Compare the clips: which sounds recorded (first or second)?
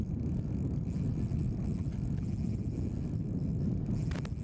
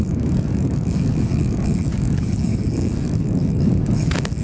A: first